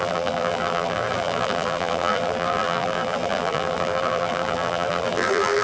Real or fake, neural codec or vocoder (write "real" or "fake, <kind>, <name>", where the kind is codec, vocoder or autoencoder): fake, vocoder, BigVGAN v2